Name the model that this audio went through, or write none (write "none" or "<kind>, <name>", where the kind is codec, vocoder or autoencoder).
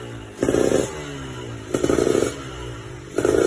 none